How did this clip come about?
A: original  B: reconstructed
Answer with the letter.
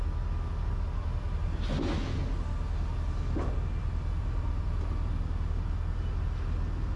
A